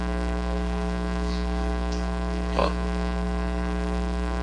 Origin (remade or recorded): remade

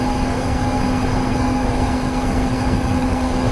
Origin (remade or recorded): remade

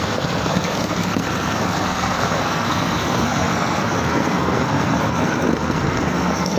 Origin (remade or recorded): remade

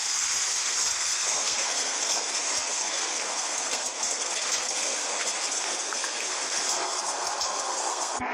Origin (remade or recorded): remade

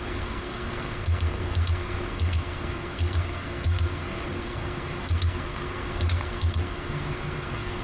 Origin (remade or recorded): remade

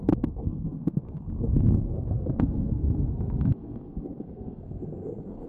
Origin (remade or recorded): remade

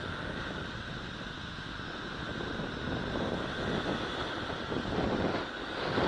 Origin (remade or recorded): recorded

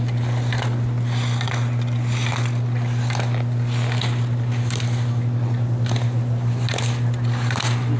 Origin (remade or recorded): recorded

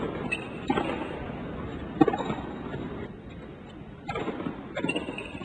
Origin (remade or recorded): recorded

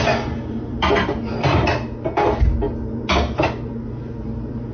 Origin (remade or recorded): recorded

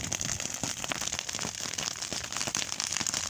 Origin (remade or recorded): recorded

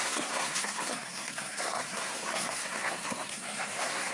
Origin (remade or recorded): remade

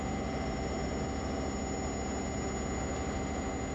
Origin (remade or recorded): recorded